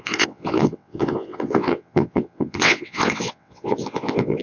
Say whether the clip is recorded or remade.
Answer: remade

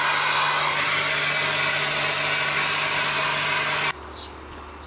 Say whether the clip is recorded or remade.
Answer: recorded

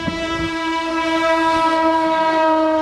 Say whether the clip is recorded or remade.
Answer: remade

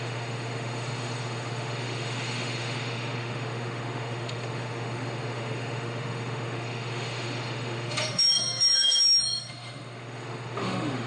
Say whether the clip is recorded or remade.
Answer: remade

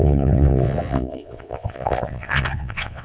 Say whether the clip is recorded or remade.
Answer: remade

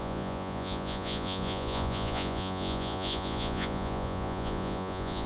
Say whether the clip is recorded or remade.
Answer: remade